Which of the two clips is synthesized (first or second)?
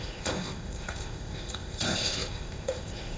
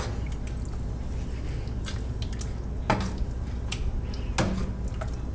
first